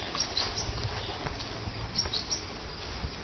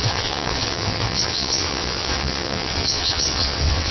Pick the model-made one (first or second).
second